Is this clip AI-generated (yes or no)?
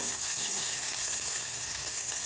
yes